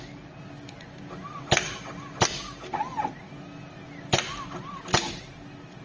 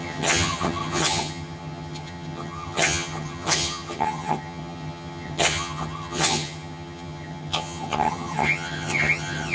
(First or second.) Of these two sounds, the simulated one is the second